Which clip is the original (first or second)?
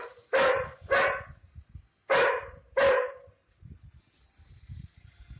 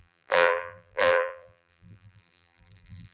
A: first